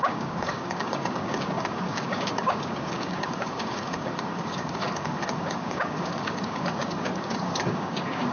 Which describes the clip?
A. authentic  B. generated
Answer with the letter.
B